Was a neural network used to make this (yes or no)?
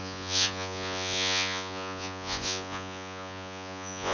yes